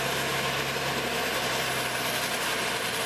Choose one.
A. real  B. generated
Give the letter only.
A